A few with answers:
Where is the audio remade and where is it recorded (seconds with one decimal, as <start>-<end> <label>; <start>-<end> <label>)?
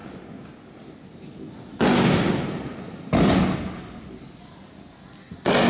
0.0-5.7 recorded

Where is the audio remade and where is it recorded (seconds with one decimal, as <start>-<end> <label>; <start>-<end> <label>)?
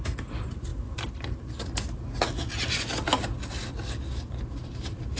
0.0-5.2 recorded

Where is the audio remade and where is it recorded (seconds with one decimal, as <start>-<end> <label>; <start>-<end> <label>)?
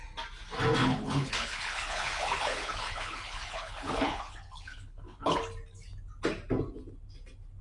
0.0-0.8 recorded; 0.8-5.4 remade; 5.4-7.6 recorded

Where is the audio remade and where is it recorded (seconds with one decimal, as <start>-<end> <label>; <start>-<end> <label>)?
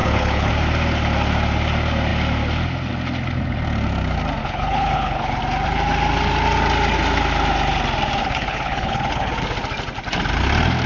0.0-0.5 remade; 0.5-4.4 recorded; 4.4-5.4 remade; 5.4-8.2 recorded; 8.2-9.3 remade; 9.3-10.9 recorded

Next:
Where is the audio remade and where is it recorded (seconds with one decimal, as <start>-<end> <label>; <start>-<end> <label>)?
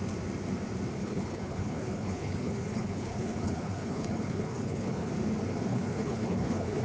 0.0-1.0 recorded; 1.0-5.1 remade; 5.1-5.7 recorded; 5.7-6.8 remade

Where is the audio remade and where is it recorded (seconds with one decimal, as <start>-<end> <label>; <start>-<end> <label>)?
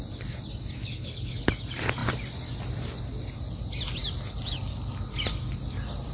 0.0-0.8 recorded; 0.8-1.5 remade; 1.5-6.1 recorded